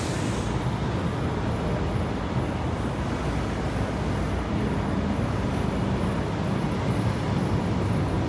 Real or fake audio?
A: real